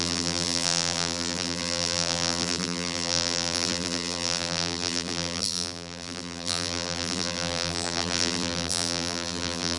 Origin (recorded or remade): remade